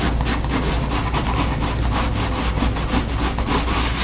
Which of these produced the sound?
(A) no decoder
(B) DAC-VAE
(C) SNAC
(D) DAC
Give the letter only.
A